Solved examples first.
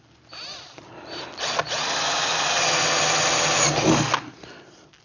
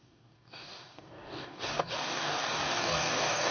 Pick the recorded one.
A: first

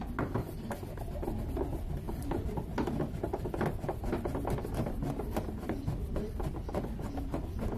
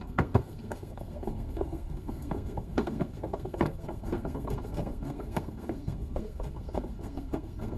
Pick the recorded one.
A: first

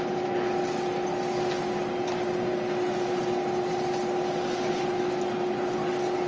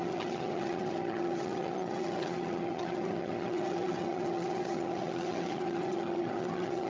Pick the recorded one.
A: first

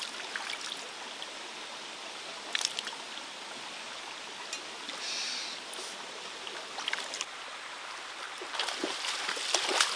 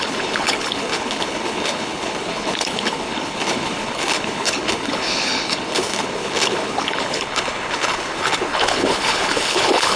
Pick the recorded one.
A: first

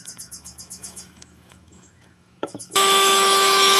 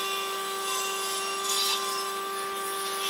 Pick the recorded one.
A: second